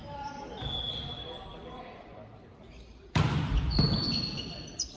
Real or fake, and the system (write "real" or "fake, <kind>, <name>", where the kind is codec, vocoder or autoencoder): real